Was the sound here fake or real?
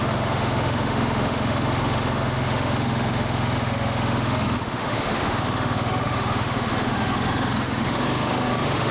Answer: fake